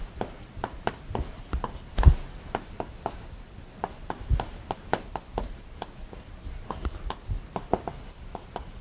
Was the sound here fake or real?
real